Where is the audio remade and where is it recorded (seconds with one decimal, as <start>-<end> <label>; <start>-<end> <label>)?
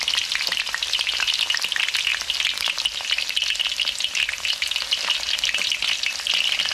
0.0-0.5 recorded; 0.5-1.1 remade; 1.1-6.7 recorded